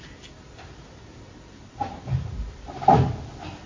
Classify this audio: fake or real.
real